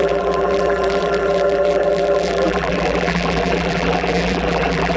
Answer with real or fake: fake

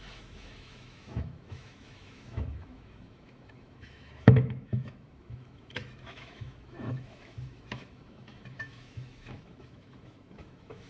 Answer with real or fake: fake